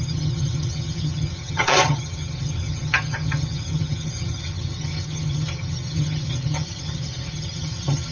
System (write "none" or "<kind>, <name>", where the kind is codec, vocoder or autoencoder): vocoder, HiFi-GAN